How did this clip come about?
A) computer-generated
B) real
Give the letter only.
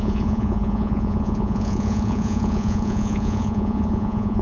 A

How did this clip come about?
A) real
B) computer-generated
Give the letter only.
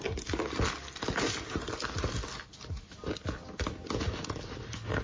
A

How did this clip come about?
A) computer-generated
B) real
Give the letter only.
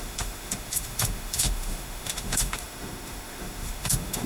A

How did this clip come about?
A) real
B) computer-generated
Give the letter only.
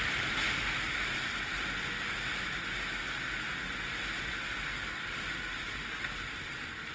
A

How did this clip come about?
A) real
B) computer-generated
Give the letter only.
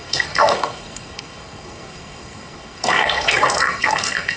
B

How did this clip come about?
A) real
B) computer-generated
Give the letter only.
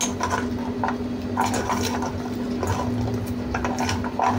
A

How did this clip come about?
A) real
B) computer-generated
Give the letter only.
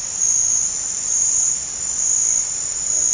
A